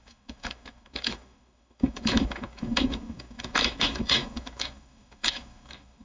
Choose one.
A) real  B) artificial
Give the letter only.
B